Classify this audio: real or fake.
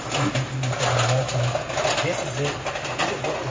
real